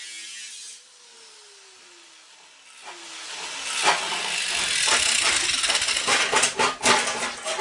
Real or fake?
real